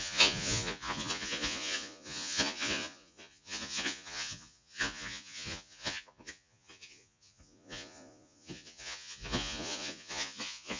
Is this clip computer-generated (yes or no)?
yes